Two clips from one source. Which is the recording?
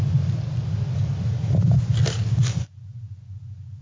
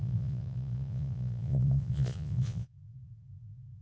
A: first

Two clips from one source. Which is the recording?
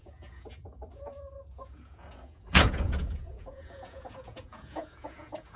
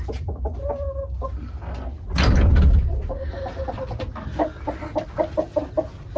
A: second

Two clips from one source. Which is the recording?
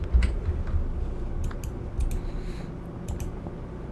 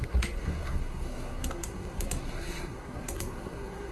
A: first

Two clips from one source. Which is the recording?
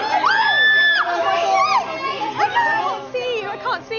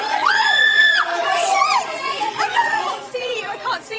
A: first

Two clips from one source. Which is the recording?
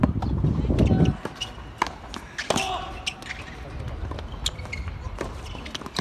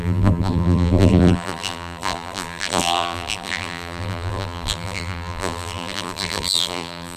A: first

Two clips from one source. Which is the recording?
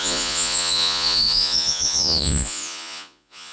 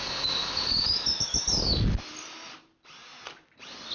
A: second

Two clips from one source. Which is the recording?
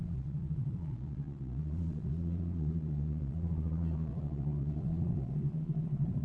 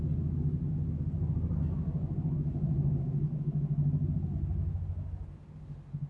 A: second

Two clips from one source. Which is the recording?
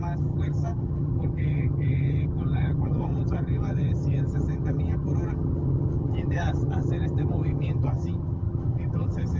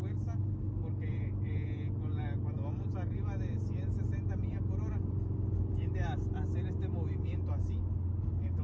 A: second